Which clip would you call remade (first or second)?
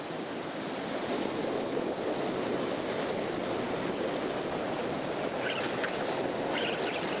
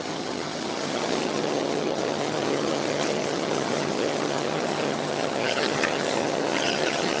second